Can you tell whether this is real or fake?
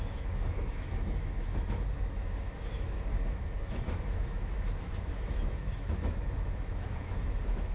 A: fake